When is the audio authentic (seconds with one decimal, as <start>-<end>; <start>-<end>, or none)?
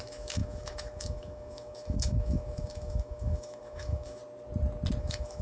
4.2-5.0